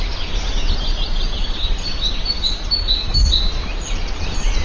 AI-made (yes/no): no